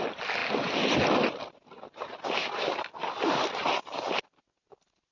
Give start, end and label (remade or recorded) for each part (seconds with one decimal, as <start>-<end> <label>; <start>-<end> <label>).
0.0-5.1 recorded